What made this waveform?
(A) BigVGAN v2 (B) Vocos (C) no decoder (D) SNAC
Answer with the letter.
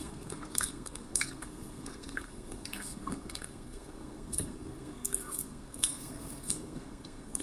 D